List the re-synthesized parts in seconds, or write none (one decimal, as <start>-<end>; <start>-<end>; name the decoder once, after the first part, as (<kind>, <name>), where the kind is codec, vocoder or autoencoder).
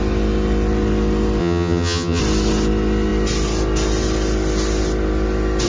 1.4-2.2 (vocoder, HiFi-GAN)